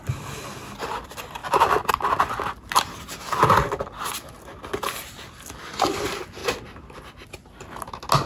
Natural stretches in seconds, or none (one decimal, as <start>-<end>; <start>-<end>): 0.0-8.3